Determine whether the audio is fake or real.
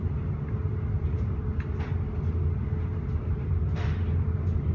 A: real